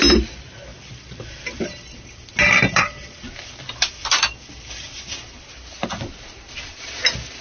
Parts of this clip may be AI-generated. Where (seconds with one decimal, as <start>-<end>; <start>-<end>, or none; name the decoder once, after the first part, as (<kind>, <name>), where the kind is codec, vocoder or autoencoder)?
none